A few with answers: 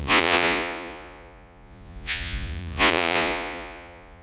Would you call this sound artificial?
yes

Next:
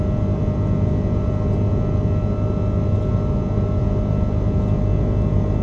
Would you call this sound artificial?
no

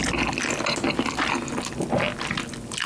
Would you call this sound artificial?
no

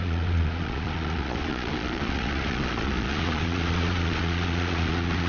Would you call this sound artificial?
yes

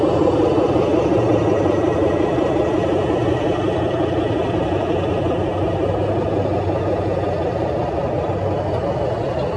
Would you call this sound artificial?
no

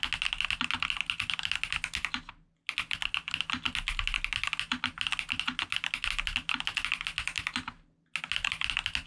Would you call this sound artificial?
no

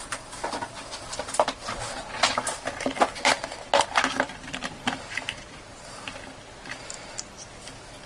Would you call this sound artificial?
no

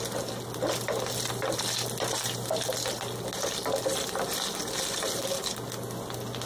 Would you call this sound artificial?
no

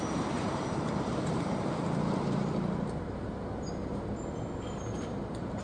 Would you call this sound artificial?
yes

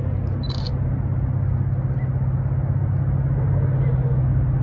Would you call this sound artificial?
no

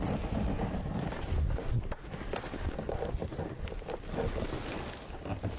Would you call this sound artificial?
no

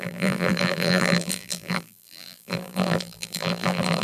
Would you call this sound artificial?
yes